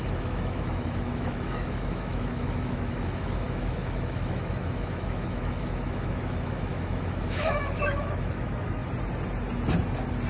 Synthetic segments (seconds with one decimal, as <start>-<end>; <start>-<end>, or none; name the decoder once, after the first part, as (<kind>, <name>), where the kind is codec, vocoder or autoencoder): 0.0-8.8 (autoencoder, DAC-VAE)